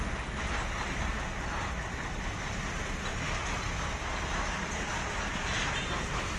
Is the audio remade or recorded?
recorded